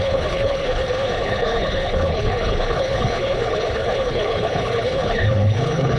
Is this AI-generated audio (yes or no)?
yes